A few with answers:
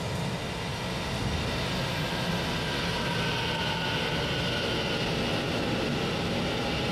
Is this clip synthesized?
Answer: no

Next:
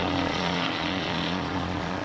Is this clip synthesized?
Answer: yes